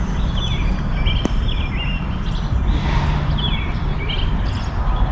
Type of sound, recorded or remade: recorded